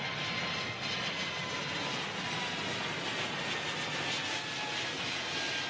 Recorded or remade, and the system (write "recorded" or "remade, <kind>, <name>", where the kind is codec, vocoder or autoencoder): recorded